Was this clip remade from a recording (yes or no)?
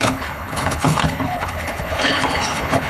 yes